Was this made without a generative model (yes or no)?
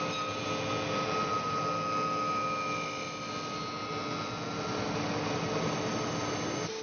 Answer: yes